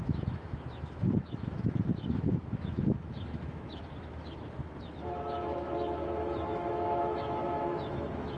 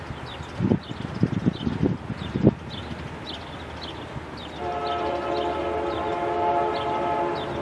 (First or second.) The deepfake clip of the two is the first